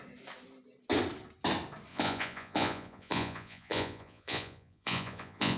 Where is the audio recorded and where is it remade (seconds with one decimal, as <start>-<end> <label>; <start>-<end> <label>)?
0.0-1.9 recorded; 1.9-5.6 remade